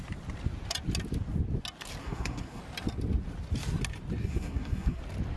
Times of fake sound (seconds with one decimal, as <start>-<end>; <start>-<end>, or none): 2.0-2.6; 4.2-5.0